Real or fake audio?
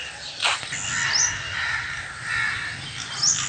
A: real